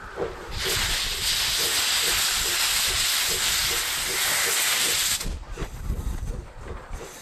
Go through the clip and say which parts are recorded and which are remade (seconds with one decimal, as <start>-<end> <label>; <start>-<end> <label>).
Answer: 0.0-3.6 remade; 3.6-4.2 recorded; 4.2-7.2 remade